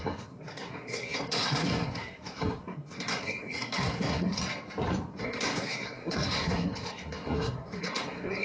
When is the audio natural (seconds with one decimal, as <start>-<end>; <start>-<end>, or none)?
4.4-5.2